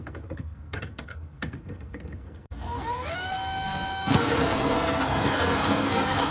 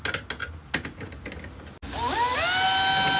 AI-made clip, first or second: first